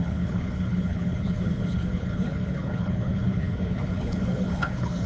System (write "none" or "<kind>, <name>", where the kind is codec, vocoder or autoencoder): codec, HILCodec